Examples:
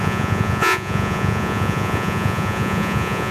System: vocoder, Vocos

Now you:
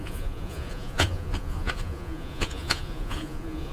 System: vocoder, Vocos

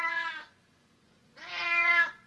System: vocoder, Vocos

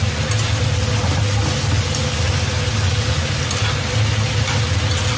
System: none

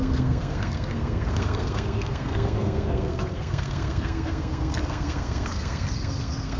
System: codec, SNAC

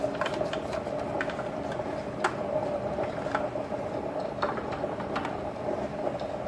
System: none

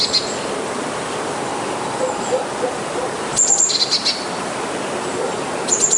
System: none